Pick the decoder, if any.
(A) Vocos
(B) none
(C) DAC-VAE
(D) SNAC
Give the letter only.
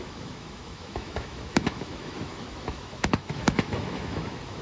C